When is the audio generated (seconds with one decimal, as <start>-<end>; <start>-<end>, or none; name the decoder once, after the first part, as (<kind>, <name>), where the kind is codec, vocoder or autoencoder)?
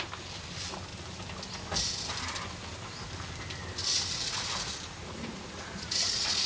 5.0-6.5 (vocoder, Vocos)